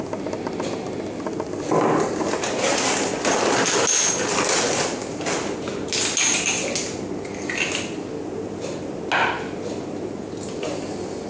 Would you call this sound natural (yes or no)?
yes